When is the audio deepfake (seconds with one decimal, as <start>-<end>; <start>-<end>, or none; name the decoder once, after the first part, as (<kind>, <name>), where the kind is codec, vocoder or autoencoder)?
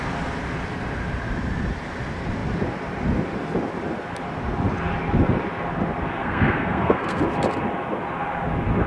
6.2-7.2 (codec, SNAC)